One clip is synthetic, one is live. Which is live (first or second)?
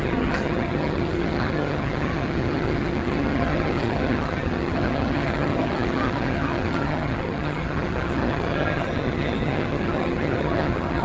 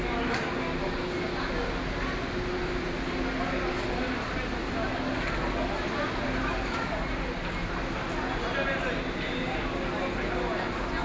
second